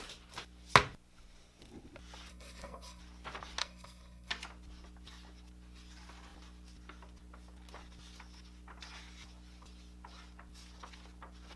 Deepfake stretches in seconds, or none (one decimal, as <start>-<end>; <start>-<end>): 2.3-3.0; 3.6-4.3